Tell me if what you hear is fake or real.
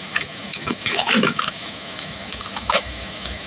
fake